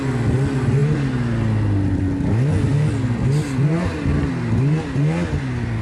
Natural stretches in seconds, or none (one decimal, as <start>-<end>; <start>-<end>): 0.0-5.8